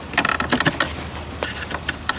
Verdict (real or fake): real